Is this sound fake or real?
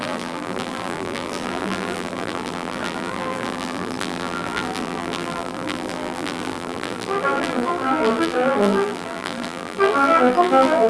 fake